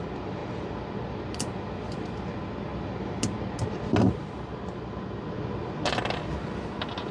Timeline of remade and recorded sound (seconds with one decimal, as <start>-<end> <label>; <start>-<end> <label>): 0.0-7.1 recorded